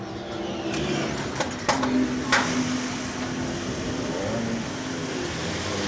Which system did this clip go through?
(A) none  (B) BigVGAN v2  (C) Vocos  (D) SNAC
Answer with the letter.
A